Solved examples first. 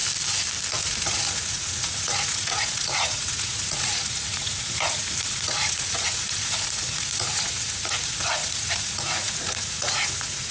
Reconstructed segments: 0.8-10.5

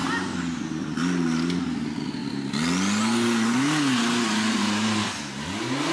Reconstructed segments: none

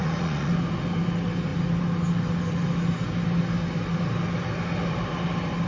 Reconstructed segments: 0.0-0.5

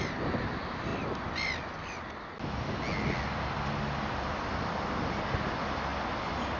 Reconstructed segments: none

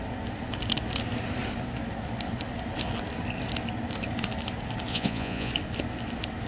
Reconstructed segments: 4.9-5.5